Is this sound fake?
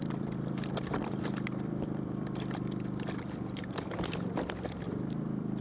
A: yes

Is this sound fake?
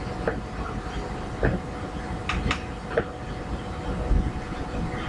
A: no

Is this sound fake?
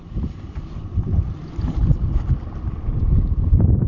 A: yes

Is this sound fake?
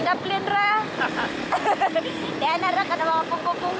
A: no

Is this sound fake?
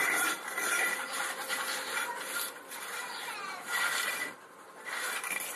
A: yes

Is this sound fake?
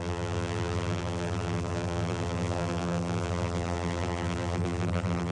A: yes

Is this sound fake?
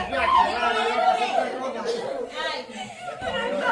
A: yes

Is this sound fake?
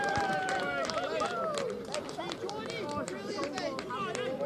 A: no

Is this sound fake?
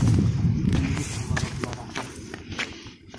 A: yes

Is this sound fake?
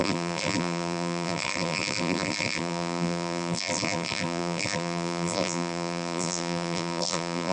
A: yes